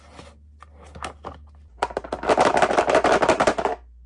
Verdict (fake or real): real